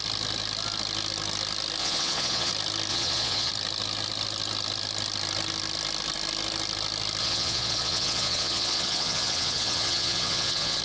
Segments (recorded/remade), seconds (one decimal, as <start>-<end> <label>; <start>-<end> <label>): 0.0-1.8 recorded; 1.8-2.5 remade; 2.5-2.9 recorded; 2.9-3.5 remade; 3.5-7.2 recorded; 7.2-10.8 remade